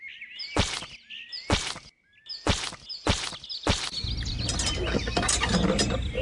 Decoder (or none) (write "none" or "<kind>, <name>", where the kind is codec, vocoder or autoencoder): none